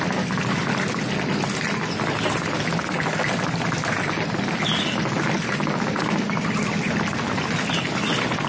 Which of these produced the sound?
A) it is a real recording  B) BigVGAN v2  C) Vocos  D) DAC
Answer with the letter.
A